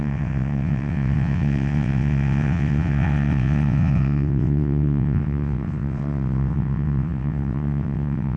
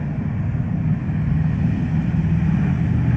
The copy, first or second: first